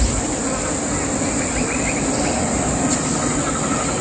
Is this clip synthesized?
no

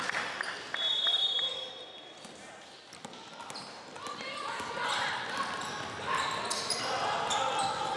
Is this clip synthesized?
no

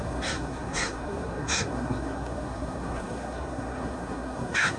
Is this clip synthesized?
yes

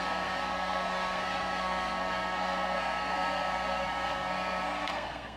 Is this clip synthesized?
yes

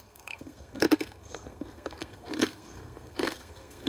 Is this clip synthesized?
yes